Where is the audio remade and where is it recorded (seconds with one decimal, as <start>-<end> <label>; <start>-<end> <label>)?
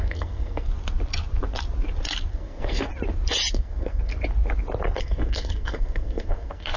0.0-0.7 remade; 0.7-2.3 recorded; 2.3-2.9 remade; 2.9-3.5 recorded; 3.5-4.1 remade; 4.1-5.0 recorded; 5.0-6.8 remade